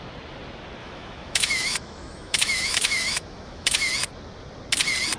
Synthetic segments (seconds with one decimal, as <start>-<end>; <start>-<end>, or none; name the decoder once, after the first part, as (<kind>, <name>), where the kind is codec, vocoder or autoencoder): 0.8-3.9 (autoencoder, DAC-VAE)